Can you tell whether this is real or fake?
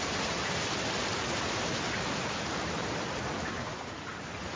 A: real